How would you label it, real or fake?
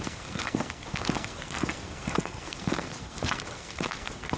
fake